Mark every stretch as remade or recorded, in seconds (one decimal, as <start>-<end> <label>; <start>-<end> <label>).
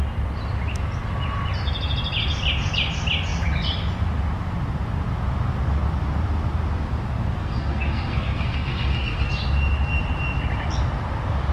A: 0.0-7.4 recorded; 7.4-9.3 remade; 9.3-11.5 recorded